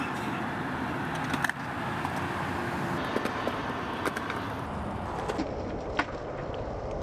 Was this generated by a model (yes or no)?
no